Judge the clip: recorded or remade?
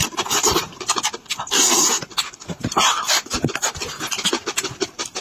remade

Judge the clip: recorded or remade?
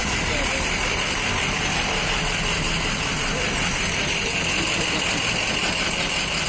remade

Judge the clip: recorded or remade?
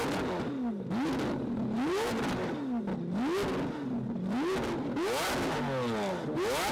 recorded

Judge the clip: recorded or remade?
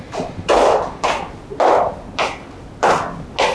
recorded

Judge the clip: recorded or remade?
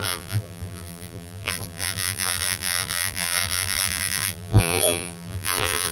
remade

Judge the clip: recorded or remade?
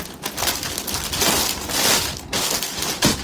recorded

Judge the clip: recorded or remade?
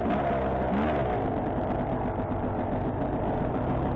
recorded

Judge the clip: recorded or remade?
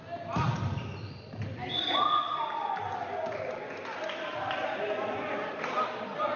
recorded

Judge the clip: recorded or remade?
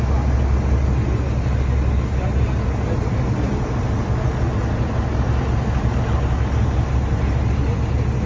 recorded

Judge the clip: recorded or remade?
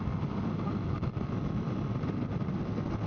recorded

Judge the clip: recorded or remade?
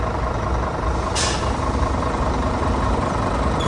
remade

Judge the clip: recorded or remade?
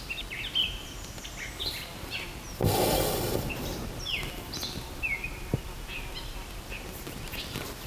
recorded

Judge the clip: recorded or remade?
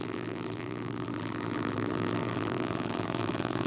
remade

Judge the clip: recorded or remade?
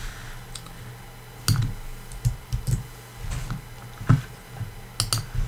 recorded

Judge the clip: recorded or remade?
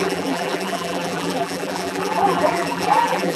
remade